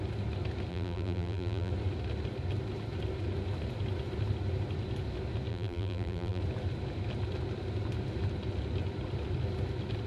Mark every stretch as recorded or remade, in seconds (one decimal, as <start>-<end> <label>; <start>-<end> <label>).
0.0-0.7 recorded; 0.7-1.7 remade; 1.7-5.5 recorded; 5.5-6.4 remade; 6.4-10.1 recorded